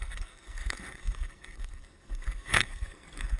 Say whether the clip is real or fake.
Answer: fake